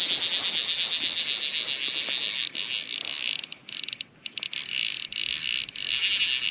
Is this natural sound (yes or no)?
yes